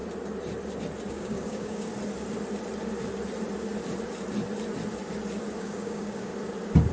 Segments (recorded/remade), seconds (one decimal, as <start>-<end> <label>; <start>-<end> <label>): 0.0-1.1 recorded; 1.1-1.9 remade; 1.9-5.6 recorded; 5.6-6.3 remade; 6.3-6.9 recorded